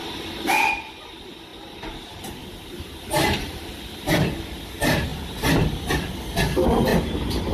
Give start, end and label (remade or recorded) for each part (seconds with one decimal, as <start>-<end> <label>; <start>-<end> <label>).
0.0-1.5 recorded; 1.5-3.8 remade; 3.8-6.9 recorded; 6.9-7.5 remade